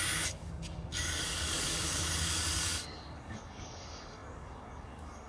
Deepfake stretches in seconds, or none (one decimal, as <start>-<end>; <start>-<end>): 0.0-5.3